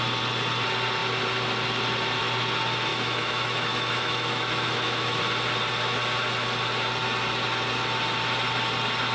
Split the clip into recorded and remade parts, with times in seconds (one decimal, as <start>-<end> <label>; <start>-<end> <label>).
0.0-2.9 recorded; 2.9-5.2 remade; 5.2-9.1 recorded